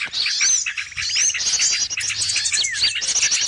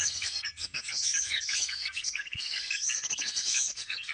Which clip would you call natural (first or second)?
first